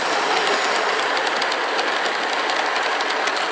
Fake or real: real